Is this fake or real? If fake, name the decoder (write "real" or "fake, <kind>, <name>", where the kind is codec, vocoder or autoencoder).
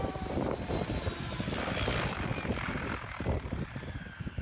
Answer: fake, vocoder, BigVGAN v2